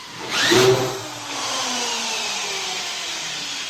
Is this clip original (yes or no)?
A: no